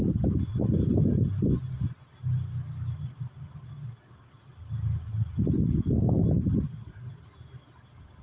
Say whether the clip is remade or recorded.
recorded